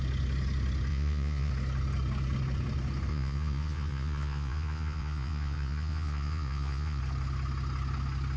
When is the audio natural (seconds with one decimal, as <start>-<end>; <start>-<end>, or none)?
0.0-0.9; 1.5-3.1; 7.0-8.4